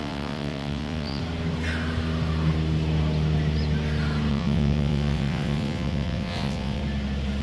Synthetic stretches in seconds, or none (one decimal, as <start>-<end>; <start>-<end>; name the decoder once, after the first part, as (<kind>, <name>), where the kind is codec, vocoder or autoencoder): 0.0-1.2 (vocoder, WaveNeXt); 4.3-6.8